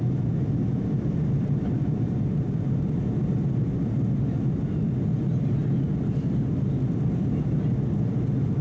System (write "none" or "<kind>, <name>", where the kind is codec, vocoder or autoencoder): none